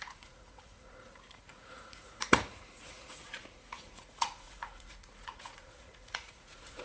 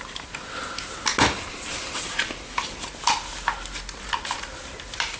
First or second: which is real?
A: second